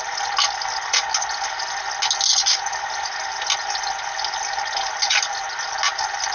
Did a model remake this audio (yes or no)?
no